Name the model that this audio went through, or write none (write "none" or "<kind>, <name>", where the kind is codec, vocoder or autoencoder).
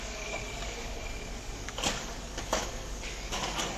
codec, DAC